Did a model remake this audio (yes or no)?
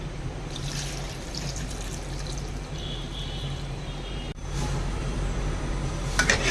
yes